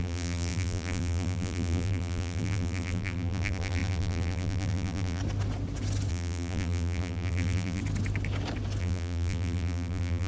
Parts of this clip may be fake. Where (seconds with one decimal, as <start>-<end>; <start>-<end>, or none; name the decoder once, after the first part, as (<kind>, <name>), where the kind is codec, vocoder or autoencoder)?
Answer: 0.0-5.2 (vocoder, BigVGAN v2); 6.1-7.8; 8.8-10.3